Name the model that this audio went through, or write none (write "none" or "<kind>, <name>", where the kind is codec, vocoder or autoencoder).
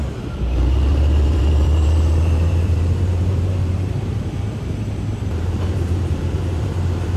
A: vocoder, BigVGAN v2